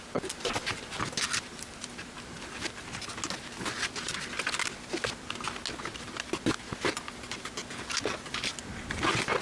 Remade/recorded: recorded